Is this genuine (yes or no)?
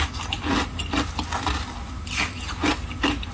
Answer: yes